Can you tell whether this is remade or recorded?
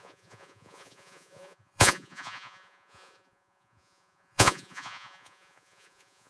remade